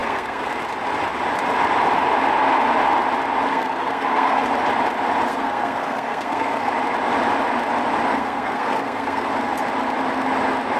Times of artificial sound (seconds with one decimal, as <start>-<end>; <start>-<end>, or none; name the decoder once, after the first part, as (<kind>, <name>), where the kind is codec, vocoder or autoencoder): 0.0-0.5 (codec, SNAC); 3.5-4.4; 5.3-6.7; 8.1-9.3